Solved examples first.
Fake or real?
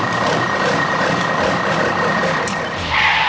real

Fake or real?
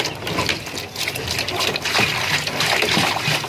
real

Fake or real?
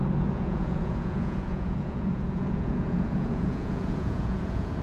fake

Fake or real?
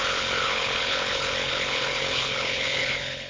fake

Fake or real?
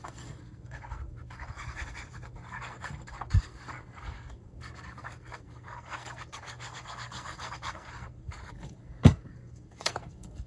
fake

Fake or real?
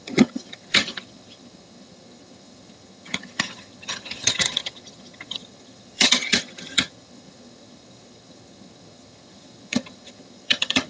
fake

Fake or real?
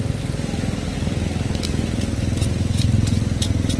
real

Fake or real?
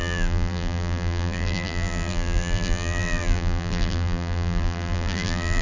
fake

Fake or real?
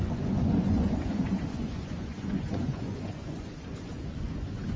fake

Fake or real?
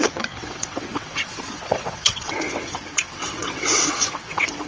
fake